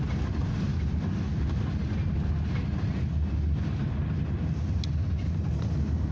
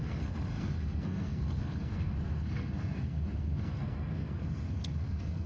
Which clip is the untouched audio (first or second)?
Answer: first